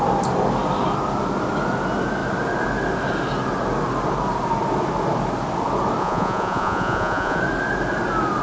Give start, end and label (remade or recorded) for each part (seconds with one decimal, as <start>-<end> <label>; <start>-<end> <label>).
0.0-6.0 recorded; 6.0-7.4 remade; 7.4-8.4 recorded